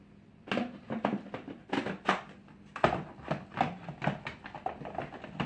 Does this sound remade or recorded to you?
recorded